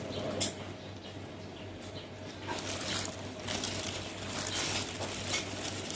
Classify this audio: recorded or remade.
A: recorded